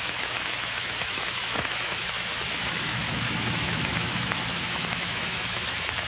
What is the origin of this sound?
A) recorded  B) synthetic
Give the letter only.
B